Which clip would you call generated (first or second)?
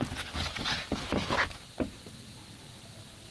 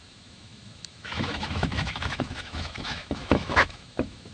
second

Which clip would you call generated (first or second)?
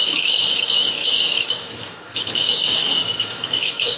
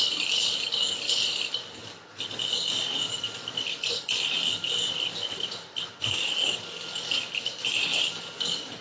first